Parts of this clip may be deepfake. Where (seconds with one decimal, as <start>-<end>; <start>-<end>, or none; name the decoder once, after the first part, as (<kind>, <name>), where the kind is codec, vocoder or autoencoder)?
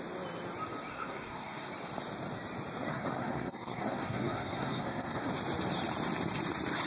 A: 0.9-1.7 (codec, SNAC); 2.9-5.3